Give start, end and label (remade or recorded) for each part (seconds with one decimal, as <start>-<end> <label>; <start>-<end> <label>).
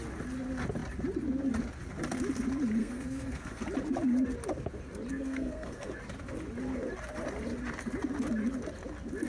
0.0-2.8 recorded; 2.8-3.6 remade; 3.6-5.1 recorded; 5.1-5.9 remade; 5.9-9.3 recorded